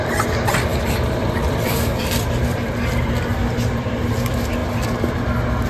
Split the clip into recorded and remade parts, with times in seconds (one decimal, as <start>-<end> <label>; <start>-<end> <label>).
0.0-0.7 recorded; 0.7-4.1 remade; 4.1-4.6 recorded; 4.6-5.2 remade; 5.2-5.7 recorded